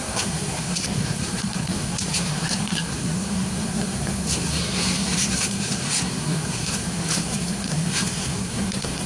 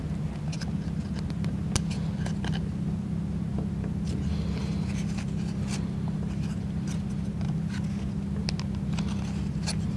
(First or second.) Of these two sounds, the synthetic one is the first